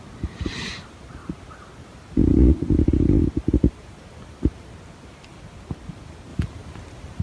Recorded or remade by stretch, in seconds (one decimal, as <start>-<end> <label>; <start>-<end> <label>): 0.0-6.3 recorded; 6.3-7.2 remade